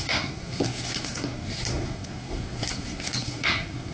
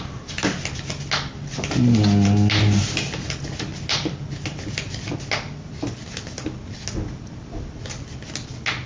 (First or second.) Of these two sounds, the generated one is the first